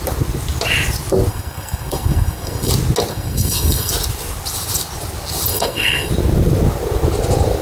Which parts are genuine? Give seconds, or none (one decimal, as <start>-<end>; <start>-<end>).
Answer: 0.0-1.3; 2.7-3.1; 3.9-5.5; 6.1-7.6